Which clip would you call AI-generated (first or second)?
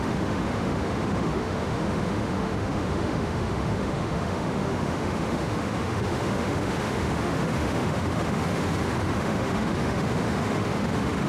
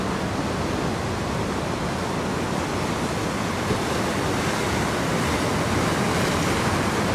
first